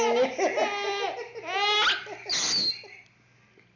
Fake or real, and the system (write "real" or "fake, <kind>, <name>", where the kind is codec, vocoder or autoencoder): real